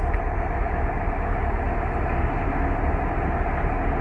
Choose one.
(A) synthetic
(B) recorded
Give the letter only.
B